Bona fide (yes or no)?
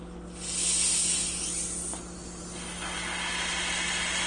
yes